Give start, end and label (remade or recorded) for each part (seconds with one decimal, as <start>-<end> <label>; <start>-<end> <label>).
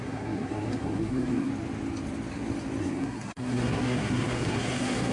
0.0-1.5 remade; 1.5-2.8 recorded; 2.8-5.1 remade